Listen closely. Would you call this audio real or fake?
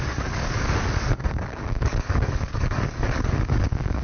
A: fake